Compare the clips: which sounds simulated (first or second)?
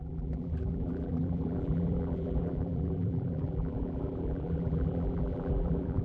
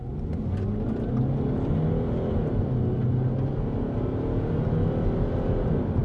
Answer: first